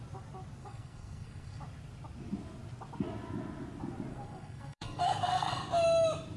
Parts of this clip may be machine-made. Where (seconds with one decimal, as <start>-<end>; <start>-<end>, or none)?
0.6-1.6; 4.1-5.5